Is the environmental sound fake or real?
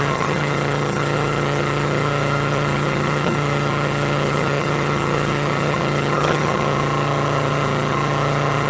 fake